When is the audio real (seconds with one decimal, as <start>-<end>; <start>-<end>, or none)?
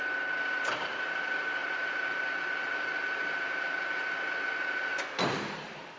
0.0-6.0